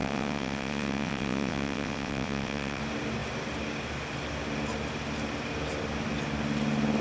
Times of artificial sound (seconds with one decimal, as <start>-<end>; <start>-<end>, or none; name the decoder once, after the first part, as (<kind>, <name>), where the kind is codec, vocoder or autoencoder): 0.0-2.8 (vocoder, WaveNeXt)